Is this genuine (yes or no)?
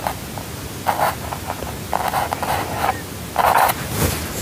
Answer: yes